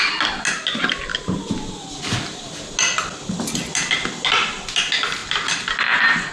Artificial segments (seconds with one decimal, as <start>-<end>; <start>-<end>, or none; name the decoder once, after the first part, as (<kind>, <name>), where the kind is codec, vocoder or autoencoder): none